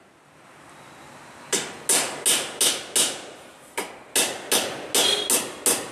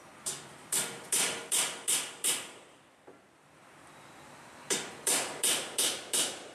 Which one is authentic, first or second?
first